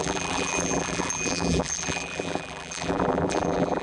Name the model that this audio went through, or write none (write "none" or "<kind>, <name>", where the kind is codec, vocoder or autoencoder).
vocoder, BigVGAN v2